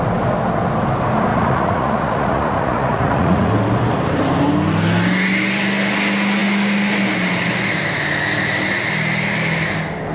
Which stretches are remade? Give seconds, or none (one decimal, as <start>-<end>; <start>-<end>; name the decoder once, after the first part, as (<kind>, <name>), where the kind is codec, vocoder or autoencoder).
1.3-3.5 (vocoder, Vocos)